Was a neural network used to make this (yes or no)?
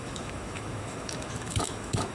yes